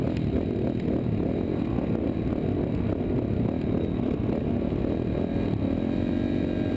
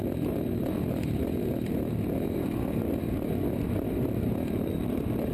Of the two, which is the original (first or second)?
first